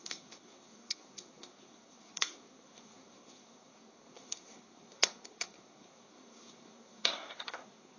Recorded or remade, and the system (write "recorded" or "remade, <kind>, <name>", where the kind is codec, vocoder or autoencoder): remade, codec, SNAC